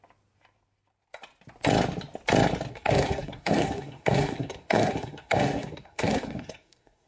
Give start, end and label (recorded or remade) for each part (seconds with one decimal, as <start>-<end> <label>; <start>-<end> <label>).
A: 0.0-2.7 recorded; 2.7-7.1 remade